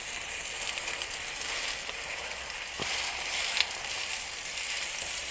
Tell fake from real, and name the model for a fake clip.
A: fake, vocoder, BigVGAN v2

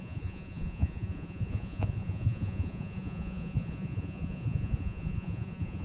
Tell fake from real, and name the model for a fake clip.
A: fake, vocoder, Vocos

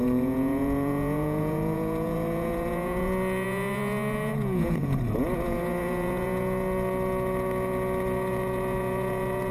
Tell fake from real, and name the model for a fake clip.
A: fake, vocoder, Vocos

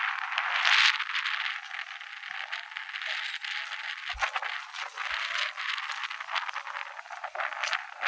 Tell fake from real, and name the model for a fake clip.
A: real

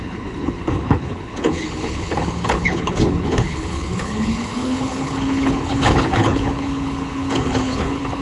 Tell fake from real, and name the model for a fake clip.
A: fake, codec, HILCodec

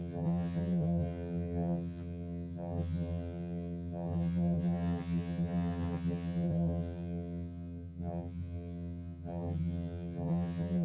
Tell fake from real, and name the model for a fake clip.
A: fake, vocoder, HiFi-GAN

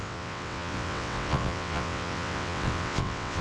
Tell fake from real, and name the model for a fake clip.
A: fake, vocoder, WaveNeXt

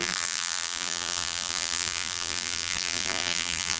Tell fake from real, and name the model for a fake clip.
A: fake, vocoder, BigVGAN v2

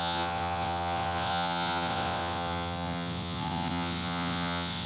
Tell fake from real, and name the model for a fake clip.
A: fake, vocoder, WaveNeXt